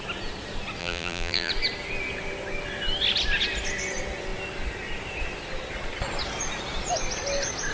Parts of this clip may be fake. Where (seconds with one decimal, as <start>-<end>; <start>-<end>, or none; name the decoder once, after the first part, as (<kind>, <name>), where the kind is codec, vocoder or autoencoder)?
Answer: 0.8-1.5 (vocoder, BigVGAN v2)